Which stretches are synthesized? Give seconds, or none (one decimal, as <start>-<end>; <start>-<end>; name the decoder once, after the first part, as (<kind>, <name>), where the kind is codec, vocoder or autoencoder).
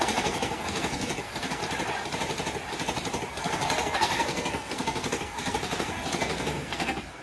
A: 0.0-1.6 (codec, SNAC); 3.3-7.2